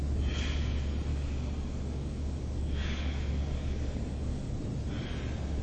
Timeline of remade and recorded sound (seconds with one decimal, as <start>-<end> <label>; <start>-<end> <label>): 0.0-1.1 recorded; 1.1-4.5 remade; 4.5-5.6 recorded